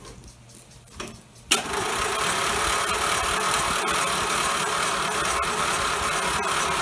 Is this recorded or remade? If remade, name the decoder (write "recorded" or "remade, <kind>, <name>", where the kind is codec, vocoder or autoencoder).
recorded